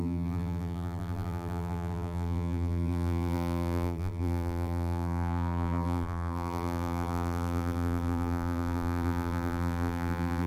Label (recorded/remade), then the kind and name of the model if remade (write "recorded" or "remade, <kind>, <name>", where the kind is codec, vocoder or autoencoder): remade, vocoder, BigVGAN v2